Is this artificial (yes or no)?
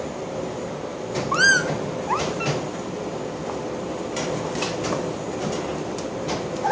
no